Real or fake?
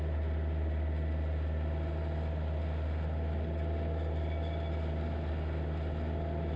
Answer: real